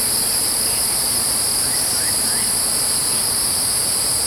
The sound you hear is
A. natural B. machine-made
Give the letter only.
B